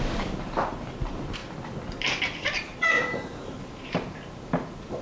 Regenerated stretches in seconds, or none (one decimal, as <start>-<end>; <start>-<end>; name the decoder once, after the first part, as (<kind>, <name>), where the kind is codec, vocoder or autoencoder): 0.0-1.4 (vocoder, BigVGAN v2); 2.2-2.7; 3.3-5.0